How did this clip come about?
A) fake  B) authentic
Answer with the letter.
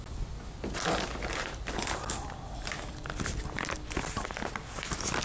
B